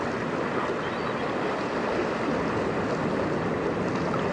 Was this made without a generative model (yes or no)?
yes